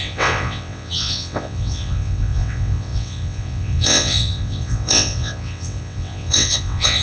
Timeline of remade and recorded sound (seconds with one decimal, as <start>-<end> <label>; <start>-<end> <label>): 0.0-7.0 remade